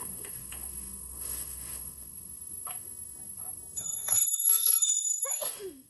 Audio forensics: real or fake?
fake